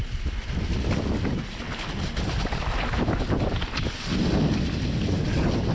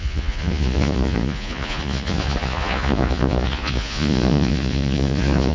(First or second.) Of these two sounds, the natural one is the first